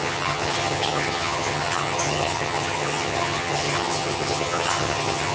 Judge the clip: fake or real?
fake